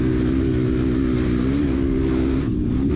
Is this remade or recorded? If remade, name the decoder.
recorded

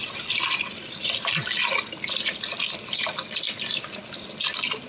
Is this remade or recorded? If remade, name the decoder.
recorded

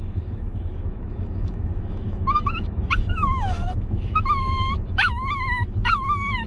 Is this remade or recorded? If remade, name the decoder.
remade, autoencoder, DAC-VAE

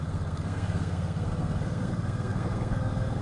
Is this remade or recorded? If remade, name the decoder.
remade, codec, SNAC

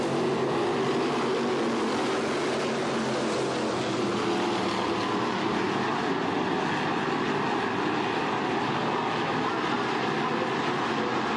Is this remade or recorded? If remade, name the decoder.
recorded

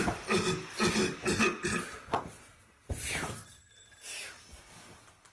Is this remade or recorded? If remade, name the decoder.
recorded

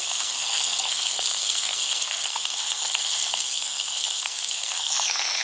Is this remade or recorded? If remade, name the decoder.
remade, codec, SNAC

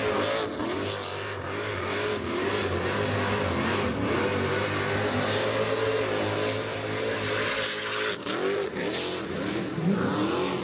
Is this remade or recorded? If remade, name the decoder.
recorded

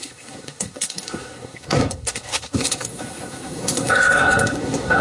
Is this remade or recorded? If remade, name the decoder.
remade, codec, SNAC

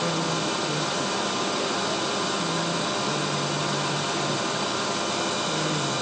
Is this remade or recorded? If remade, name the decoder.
recorded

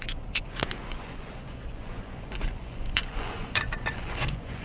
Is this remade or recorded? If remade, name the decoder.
remade, vocoder, Vocos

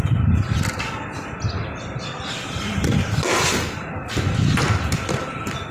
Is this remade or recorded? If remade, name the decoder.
recorded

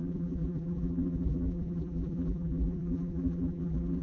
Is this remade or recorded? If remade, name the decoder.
remade, vocoder, BigVGAN v2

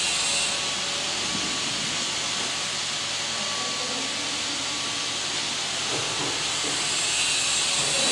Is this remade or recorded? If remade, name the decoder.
recorded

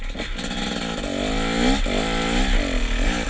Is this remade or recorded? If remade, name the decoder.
recorded